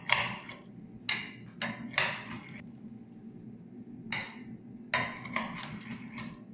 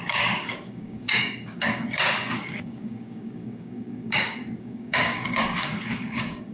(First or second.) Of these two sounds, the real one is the first